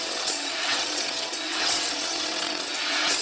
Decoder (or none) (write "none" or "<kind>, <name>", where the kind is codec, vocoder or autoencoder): vocoder, WaveNeXt